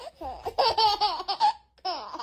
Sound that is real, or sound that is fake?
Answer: real